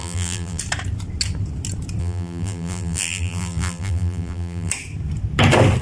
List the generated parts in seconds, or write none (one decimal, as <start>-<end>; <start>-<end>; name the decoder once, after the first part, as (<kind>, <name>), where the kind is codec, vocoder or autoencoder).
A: 0.0-0.6 (vocoder, BigVGAN v2); 2.0-4.7